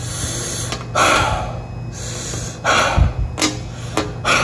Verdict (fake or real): real